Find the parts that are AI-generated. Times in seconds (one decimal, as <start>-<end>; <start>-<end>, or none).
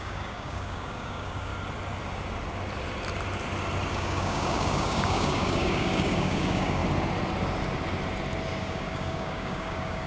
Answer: 0.0-1.5; 3.9-6.8; 8.6-10.1